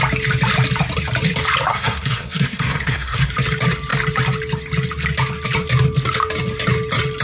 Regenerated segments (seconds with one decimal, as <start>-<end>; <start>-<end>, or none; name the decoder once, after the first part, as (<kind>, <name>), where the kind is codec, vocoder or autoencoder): 1.7-3.3 (codec, SNAC)